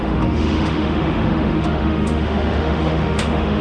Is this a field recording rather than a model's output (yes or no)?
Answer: no